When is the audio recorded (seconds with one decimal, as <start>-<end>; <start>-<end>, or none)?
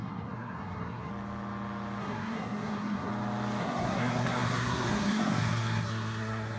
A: 1.1-2.0; 3.1-3.6